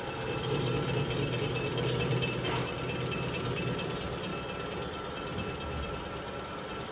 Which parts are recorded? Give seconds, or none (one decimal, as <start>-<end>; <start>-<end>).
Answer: 4.3-6.5